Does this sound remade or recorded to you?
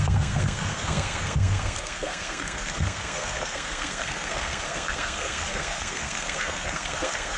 remade